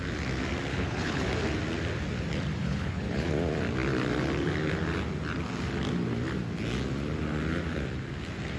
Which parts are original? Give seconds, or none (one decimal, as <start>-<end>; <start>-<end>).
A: 0.0-0.7; 1.3-2.6; 3.3-8.6